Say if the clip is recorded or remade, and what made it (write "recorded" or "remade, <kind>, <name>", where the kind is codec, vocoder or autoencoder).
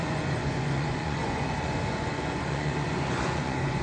remade, vocoder, Vocos